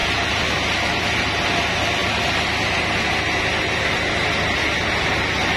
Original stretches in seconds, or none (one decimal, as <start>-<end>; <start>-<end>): 0.0-5.6